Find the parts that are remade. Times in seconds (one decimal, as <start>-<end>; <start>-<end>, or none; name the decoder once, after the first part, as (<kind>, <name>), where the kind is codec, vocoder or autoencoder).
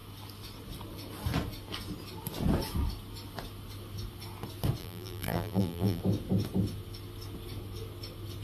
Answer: 4.8-6.0 (vocoder, BigVGAN v2)